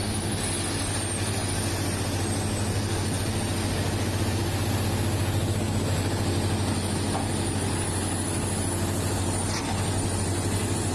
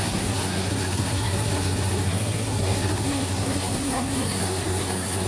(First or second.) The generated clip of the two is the second